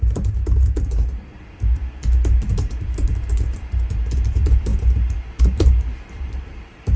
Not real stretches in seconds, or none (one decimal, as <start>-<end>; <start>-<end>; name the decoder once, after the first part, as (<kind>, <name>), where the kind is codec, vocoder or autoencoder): 0.0-7.0 (vocoder, BigVGAN v2)